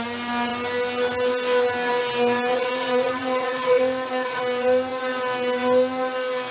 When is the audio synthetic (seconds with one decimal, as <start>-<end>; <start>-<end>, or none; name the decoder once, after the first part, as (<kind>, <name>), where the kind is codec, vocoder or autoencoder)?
2.5-4.4 (vocoder, Vocos)